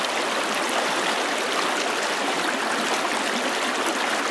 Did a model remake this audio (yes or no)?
no